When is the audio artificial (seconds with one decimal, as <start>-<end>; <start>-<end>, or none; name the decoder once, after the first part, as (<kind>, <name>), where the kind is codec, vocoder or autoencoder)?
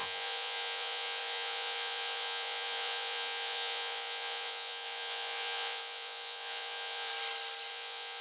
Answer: 0.0-7.1 (vocoder, Vocos); 7.7-8.2